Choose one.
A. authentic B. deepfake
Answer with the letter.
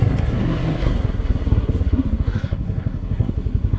B